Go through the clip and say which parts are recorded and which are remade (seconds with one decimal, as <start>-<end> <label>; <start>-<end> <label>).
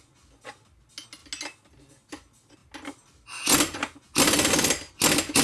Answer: 0.0-5.4 recorded